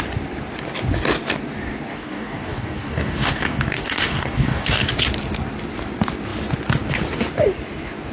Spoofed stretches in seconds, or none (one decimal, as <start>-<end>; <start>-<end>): 1.9-4.9